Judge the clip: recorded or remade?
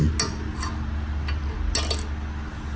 recorded